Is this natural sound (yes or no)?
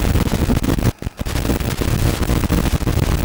yes